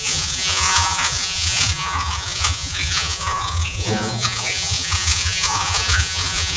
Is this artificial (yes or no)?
yes